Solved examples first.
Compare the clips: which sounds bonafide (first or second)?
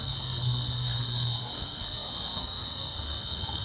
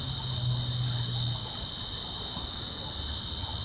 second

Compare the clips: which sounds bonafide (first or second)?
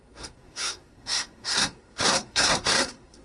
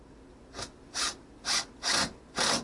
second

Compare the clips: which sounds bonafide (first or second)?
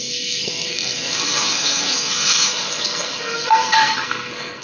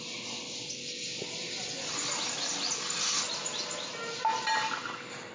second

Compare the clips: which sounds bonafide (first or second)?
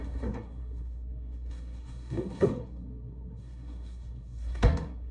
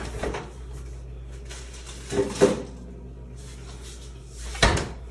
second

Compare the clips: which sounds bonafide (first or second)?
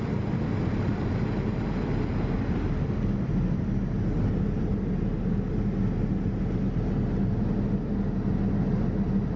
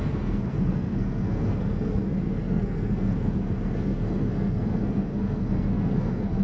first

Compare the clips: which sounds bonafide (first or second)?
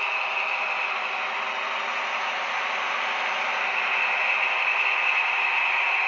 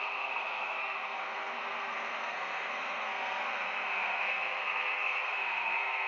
first